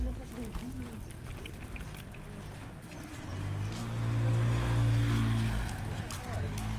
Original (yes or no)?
yes